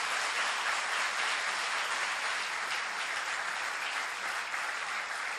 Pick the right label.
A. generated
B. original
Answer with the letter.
B